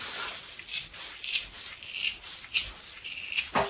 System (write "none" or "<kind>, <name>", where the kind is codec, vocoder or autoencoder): none